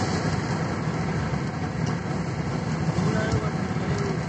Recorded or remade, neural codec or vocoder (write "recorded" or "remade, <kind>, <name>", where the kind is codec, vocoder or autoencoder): recorded